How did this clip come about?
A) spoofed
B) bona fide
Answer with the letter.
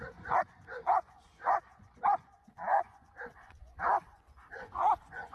A